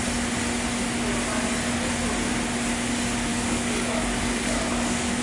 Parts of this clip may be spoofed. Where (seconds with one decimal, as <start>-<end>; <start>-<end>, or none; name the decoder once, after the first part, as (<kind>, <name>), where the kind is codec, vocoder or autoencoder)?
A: 3.3-5.2 (codec, DAC)